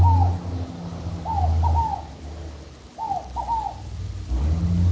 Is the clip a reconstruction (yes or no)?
no